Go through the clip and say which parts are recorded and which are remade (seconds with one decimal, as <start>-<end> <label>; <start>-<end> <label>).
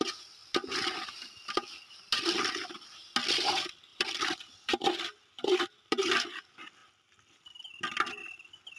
0.0-8.8 recorded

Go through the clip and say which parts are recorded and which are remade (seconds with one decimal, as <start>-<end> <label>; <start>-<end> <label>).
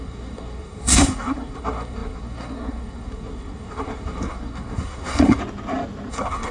0.0-5.4 remade; 5.4-6.1 recorded; 6.1-6.5 remade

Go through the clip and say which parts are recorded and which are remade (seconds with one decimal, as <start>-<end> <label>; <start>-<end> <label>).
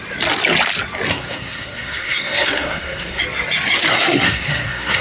0.0-1.1 recorded; 1.1-3.2 remade; 3.2-3.9 recorded; 3.9-5.0 remade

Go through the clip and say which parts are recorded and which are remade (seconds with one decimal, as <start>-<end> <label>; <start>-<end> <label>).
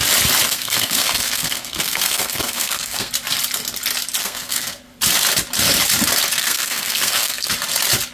0.0-0.5 recorded; 0.5-3.1 remade; 3.1-4.2 recorded; 4.2-4.8 remade; 4.8-6.4 recorded; 6.4-7.5 remade; 7.5-8.1 recorded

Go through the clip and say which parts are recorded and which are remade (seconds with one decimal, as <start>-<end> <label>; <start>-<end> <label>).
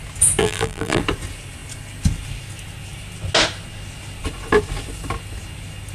0.0-0.4 recorded; 0.4-1.0 remade; 1.0-5.9 recorded